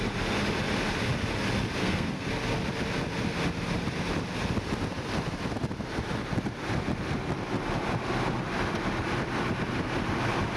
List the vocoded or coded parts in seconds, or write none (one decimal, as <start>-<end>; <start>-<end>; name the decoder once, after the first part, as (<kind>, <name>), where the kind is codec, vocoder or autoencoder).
1.8-2.3 (codec, SNAC)